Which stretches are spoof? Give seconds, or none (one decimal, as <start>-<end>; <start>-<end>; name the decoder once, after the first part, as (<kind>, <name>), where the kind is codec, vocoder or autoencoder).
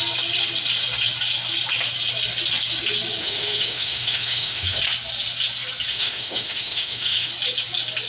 3.2-4.8 (autoencoder, DAC-VAE); 5.9-7.3